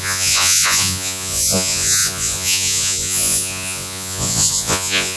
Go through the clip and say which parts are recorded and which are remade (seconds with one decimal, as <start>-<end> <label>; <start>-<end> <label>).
0.0-5.2 remade